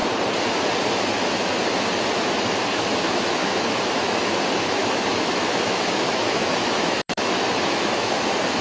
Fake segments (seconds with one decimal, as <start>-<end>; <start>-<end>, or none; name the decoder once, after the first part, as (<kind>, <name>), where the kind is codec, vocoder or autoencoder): 2.7-4.2 (autoencoder, DAC-VAE); 4.8-8.2